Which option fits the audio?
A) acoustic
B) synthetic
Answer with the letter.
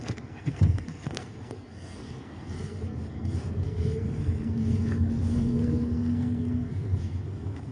B